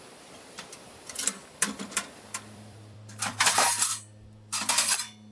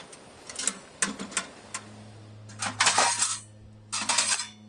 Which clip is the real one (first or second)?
second